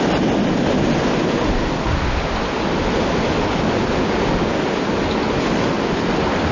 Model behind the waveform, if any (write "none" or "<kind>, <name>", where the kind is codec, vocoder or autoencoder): none